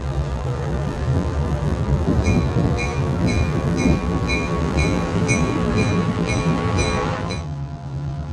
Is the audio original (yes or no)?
no